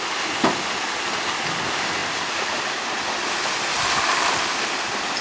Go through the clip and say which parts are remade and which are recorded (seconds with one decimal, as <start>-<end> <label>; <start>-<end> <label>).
0.0-5.2 recorded